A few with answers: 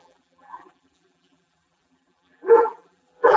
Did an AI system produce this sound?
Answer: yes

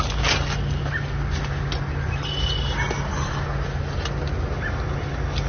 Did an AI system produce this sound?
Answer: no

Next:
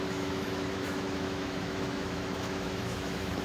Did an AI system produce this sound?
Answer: yes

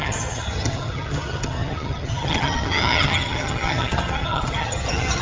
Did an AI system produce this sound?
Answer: yes